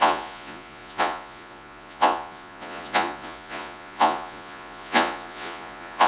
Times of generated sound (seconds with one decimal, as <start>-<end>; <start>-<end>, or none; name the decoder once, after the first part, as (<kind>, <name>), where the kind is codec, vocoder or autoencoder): 0.0-6.1 (vocoder, Vocos)

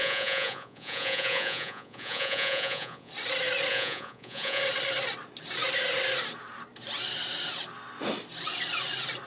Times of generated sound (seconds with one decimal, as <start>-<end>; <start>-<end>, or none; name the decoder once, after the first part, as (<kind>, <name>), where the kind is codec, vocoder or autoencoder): 0.0-3.1 (vocoder, Vocos); 3.7-4.6

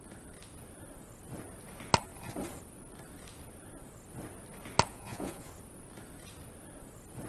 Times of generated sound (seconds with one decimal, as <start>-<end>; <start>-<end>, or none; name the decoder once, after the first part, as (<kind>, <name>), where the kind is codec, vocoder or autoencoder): 4.9-5.5 (vocoder, Vocos)

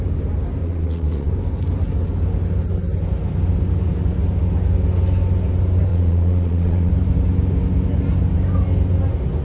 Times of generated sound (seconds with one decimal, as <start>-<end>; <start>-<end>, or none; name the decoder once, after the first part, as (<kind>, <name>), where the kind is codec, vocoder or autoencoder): 0.6-1.3 (vocoder, Vocos); 5.9-6.9

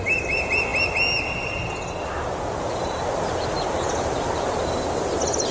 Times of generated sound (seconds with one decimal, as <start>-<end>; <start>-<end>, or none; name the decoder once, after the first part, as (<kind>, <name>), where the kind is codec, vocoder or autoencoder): none